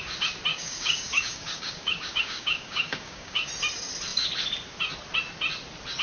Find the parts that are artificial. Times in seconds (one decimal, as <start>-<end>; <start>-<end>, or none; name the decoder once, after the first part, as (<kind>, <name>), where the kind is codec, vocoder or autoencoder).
0.5-3.5 (codec, DAC)